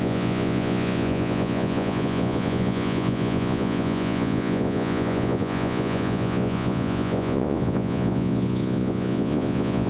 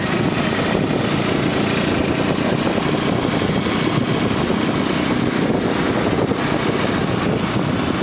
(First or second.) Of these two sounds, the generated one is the first